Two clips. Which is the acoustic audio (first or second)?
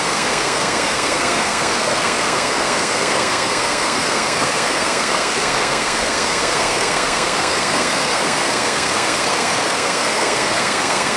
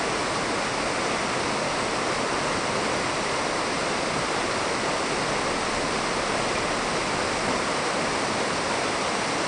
second